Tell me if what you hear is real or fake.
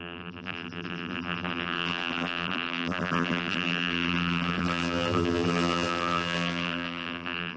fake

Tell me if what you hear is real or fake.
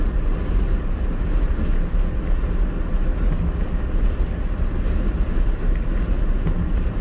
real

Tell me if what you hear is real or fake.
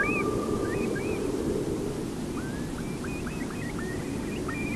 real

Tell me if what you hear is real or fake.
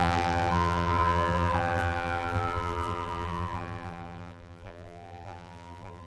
fake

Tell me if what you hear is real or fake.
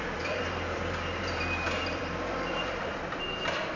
fake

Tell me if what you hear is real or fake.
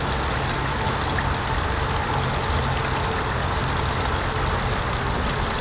real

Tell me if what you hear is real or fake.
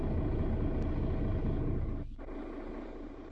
real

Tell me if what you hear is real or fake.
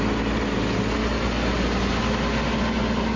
real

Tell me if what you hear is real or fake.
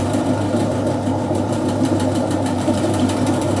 fake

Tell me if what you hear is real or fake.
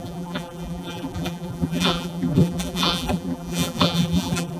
fake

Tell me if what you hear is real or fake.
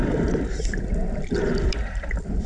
fake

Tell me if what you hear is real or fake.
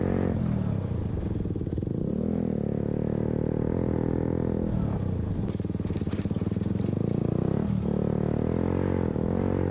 real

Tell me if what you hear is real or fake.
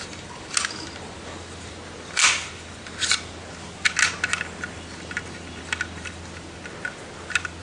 real